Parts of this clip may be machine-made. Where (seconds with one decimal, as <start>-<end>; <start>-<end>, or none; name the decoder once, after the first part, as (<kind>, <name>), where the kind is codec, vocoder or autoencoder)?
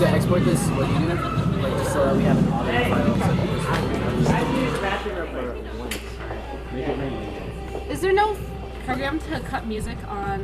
0.0-4.6 (vocoder, BigVGAN v2); 7.0-10.4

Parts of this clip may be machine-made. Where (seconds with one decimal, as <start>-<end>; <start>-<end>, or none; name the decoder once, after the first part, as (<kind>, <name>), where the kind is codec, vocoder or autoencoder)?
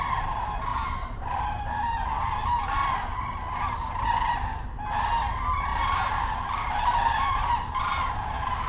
0.7-2.1 (vocoder, BigVGAN v2); 5.7-8.7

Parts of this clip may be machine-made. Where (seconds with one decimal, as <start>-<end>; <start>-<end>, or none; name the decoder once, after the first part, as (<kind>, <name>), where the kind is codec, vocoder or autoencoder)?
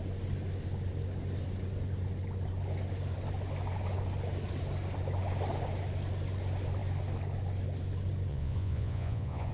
8.3-9.5 (vocoder, Vocos)